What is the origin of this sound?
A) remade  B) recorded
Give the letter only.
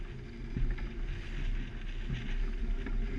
B